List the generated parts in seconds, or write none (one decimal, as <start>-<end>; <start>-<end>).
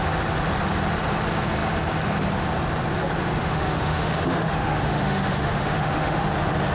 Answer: 3.4-6.2